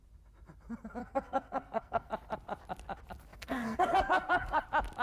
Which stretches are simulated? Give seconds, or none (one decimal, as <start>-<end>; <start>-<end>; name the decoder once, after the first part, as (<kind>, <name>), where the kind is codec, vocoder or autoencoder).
1.0-2.1 (codec, SNAC); 3.3-4.6